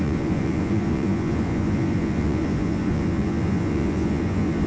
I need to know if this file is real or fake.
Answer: fake